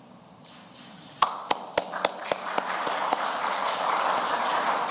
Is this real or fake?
fake